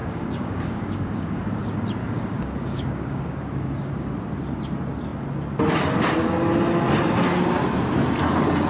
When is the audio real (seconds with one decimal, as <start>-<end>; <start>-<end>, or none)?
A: 1.5-2.0; 4.1-8.7